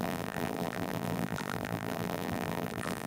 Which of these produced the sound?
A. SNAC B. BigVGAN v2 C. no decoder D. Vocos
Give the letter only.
B